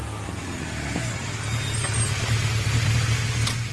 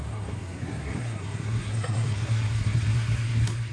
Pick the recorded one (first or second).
first